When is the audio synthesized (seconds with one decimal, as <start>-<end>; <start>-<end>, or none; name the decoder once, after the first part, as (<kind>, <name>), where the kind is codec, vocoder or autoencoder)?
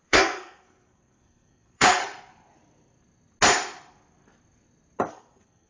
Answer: 0.0-2.0 (codec, SNAC); 5.1-5.7